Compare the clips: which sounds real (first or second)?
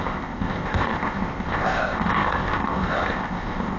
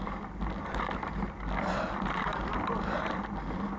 second